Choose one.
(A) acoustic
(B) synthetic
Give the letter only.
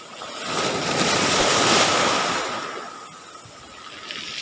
A